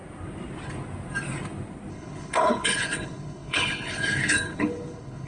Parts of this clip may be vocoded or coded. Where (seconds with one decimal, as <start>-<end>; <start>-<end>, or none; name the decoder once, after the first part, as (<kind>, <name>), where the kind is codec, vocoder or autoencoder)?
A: 1.9-5.3 (codec, HILCodec)